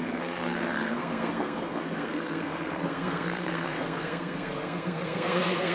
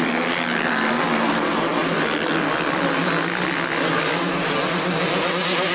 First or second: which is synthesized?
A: first